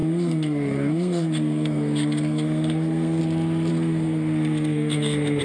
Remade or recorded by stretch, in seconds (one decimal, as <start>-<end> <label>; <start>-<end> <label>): 0.0-3.2 remade; 3.2-3.7 recorded; 3.7-5.4 remade